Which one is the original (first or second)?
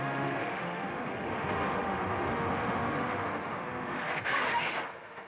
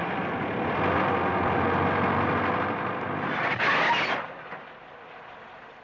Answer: second